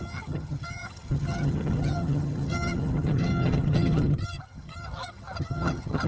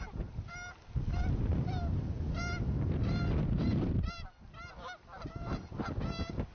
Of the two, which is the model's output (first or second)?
first